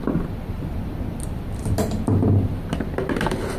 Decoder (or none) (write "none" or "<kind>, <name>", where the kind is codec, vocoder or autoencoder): none